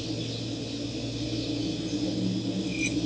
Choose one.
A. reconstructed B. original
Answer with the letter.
B